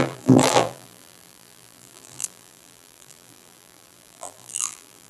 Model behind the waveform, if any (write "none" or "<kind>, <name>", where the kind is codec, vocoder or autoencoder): vocoder, BigVGAN v2